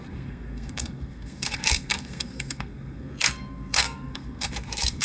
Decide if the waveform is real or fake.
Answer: fake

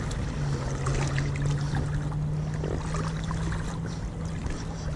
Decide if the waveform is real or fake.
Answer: real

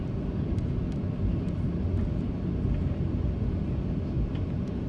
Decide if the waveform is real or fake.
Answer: real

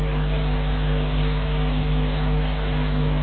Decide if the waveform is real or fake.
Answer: fake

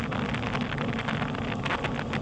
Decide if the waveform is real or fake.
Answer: real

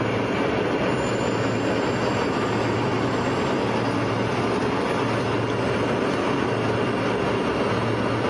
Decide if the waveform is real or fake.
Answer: real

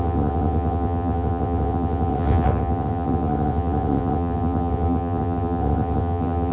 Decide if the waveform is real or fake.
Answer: fake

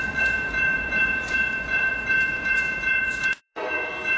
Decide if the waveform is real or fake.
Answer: fake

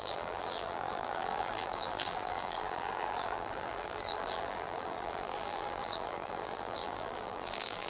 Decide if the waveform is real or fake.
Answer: fake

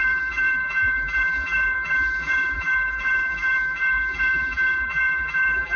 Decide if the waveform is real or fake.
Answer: fake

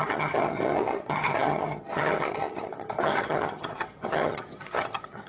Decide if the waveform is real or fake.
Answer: fake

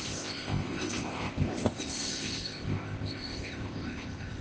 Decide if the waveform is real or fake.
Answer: fake